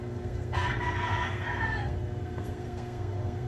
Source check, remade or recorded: remade